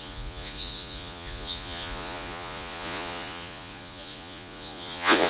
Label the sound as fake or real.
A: fake